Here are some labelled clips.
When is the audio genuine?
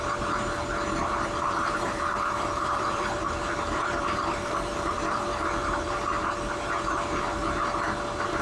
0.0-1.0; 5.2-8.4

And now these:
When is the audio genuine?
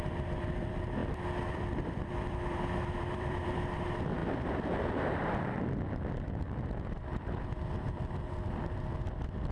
4.2-7.7